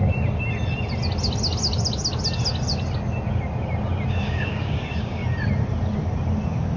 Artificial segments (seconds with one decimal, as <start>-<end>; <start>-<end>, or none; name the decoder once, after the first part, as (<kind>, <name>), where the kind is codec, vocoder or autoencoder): 4.1-5.2 (codec, DAC)